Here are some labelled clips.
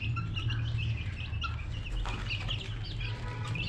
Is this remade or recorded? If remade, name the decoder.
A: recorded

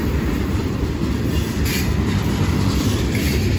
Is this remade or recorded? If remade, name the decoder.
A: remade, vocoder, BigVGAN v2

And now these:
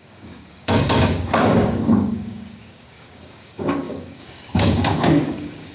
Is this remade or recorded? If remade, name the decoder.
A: remade, codec, DAC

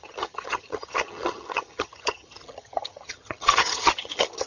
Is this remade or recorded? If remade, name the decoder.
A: remade, vocoder, HiFi-GAN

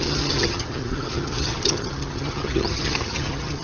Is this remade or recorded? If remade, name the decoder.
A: remade, vocoder, HiFi-GAN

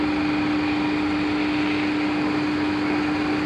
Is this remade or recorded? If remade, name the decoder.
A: recorded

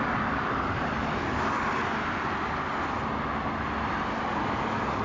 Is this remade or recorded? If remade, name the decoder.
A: recorded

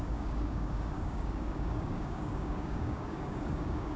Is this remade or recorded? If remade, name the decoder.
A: remade, codec, DAC